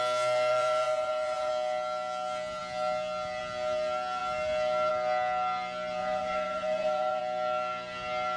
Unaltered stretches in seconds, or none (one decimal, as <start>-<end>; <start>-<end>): 0.0-0.5; 1.5-6.0; 7.2-8.4